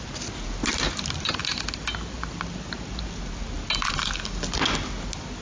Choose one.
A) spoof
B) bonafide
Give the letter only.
B